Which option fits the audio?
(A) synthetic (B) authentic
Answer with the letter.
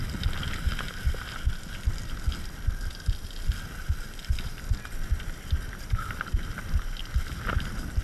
B